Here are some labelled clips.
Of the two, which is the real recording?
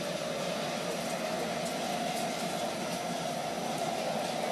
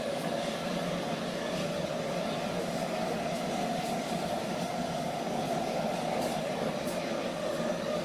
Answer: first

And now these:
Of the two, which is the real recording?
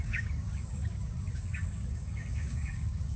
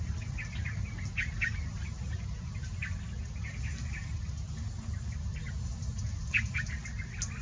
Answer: second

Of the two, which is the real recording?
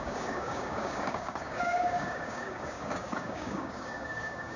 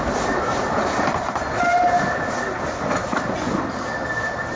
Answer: second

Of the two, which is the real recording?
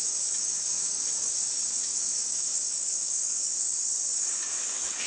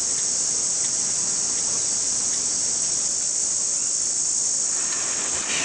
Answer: second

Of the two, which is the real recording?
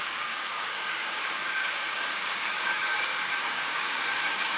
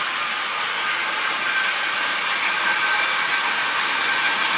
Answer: second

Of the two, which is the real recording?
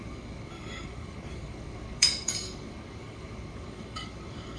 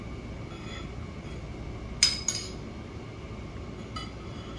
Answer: second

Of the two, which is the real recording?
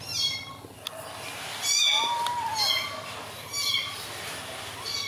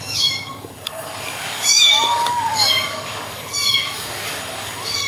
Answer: first